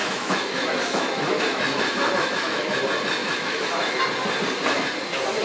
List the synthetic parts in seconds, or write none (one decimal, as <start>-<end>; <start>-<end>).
0.0-2.8; 3.2-4.0